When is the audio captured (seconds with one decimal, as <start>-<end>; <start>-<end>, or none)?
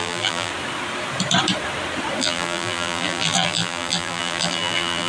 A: 0.5-2.2